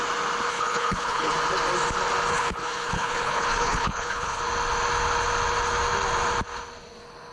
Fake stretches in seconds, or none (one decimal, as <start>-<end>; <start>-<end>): 0.5-1.3; 2.3-4.4